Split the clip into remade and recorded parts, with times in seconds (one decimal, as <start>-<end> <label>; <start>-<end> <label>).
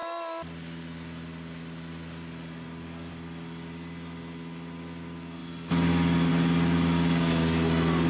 0.0-8.1 recorded